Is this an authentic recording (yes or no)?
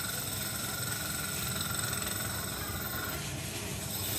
yes